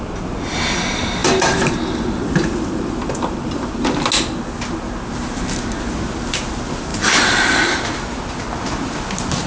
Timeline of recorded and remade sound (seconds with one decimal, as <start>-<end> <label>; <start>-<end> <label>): 0.0-1.2 recorded; 1.2-3.7 remade; 3.7-6.9 recorded; 6.9-7.4 remade; 7.4-9.5 recorded